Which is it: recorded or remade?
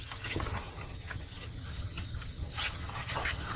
remade